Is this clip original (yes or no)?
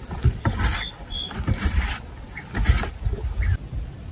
no